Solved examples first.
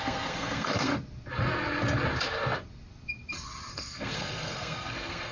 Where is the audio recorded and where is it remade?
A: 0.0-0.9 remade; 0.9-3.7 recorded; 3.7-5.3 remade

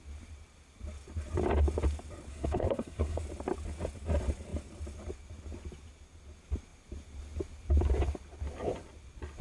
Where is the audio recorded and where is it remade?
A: 0.0-2.3 recorded; 2.3-3.2 remade; 3.2-9.4 recorded

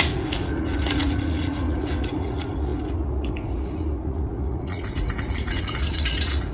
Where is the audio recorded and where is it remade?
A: 0.0-6.5 remade

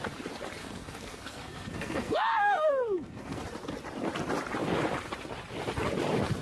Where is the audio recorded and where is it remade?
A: 0.0-0.6 recorded; 0.6-3.4 remade; 3.4-6.4 recorded